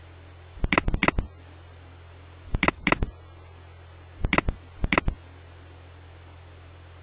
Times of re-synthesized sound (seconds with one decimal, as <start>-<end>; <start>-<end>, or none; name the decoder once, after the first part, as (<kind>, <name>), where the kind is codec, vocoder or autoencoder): none